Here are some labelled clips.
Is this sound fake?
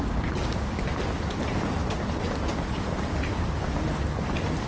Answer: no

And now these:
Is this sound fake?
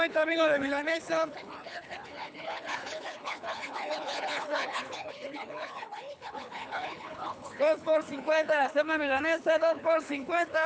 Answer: yes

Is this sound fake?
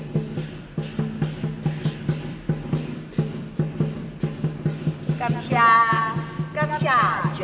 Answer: no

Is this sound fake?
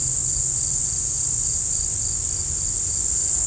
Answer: no